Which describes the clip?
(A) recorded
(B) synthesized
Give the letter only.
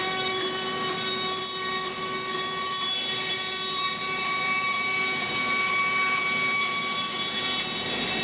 A